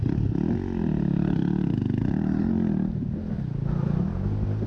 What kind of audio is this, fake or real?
real